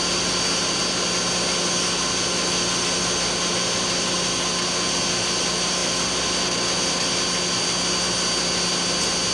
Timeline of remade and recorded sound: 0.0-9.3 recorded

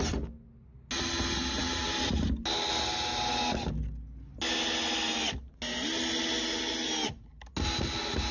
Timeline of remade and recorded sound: 0.0-8.3 recorded

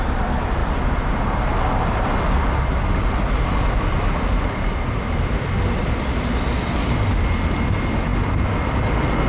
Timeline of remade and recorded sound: 0.0-9.3 recorded

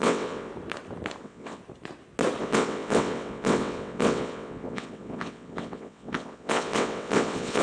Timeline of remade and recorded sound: 0.0-0.5 remade; 0.5-1.2 recorded; 1.2-1.6 remade; 1.6-2.4 recorded; 2.4-7.6 remade

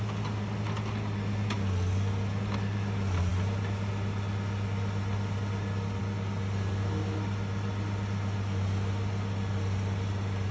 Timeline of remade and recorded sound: 0.0-10.5 recorded

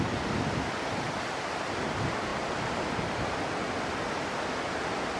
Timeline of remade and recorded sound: 0.0-5.2 recorded

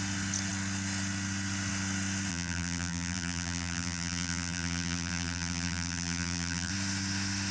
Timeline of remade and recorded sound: 0.0-2.3 recorded; 2.3-6.7 remade; 6.7-7.5 recorded

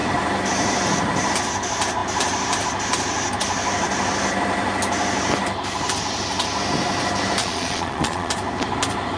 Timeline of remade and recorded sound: 0.0-7.4 recorded; 7.4-8.3 remade; 8.3-9.2 recorded